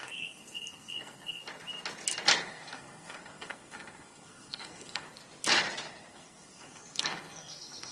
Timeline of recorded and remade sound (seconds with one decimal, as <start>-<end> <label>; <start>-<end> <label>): 0.0-1.4 remade; 1.4-2.4 recorded; 2.4-5.2 remade; 5.2-6.1 recorded; 6.1-7.9 remade